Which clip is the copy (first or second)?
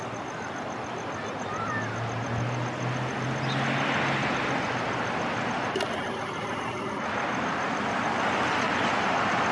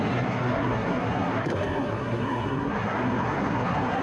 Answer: second